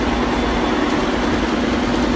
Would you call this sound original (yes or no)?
yes